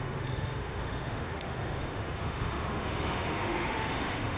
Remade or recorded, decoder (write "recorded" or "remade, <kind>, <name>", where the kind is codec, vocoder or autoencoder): remade, autoencoder, DAC-VAE